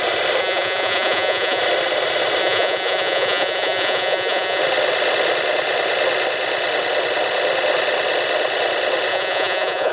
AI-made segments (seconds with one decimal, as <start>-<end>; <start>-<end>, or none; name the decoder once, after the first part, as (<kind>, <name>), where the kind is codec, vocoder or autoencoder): 0.4-1.6 (vocoder, Vocos); 2.4-4.6; 9.1-9.9